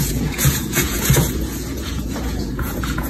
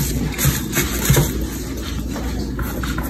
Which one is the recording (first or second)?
second